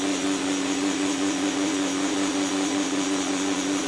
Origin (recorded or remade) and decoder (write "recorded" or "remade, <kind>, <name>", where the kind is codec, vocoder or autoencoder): remade, vocoder, Vocos